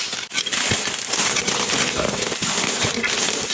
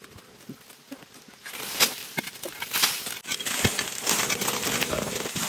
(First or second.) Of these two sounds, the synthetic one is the first